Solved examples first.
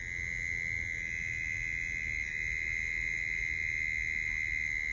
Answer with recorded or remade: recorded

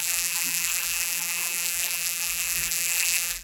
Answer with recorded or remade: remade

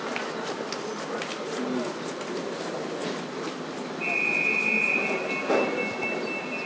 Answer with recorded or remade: recorded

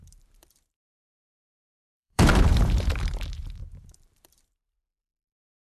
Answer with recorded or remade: remade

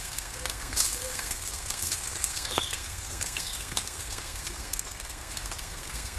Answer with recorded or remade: remade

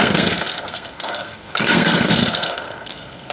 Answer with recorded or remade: remade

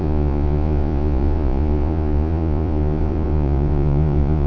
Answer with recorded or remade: remade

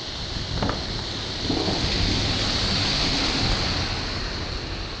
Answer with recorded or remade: recorded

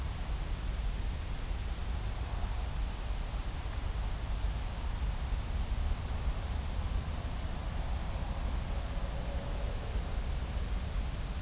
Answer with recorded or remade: recorded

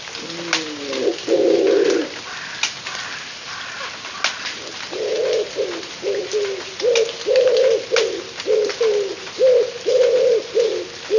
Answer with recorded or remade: recorded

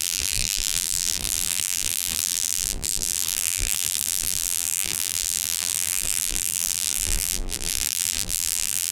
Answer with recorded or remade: remade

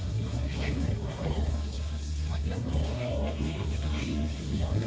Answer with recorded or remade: remade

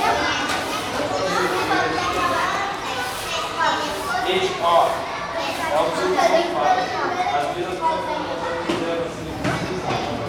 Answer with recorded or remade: recorded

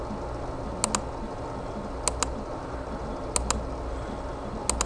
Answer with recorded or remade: recorded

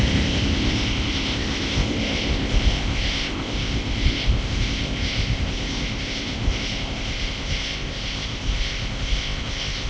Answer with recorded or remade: remade